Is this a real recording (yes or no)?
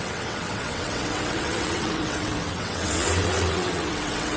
no